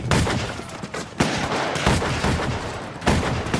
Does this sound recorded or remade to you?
remade